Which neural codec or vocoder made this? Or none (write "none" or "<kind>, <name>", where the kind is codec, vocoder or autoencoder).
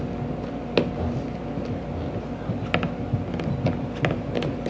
none